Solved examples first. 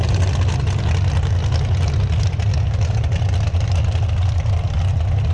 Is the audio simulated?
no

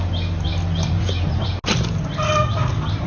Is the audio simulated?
no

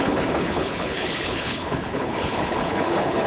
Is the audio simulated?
yes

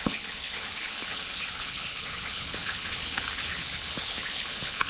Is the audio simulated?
yes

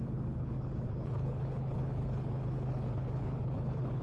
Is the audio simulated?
yes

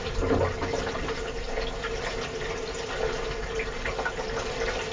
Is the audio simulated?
no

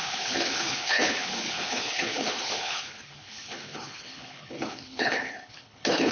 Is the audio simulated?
yes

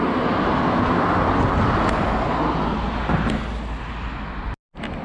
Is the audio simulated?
no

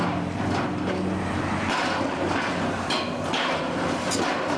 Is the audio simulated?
no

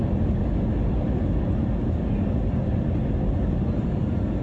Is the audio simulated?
no